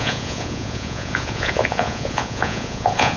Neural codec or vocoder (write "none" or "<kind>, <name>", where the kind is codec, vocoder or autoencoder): vocoder, Vocos